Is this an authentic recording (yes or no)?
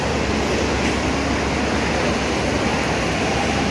yes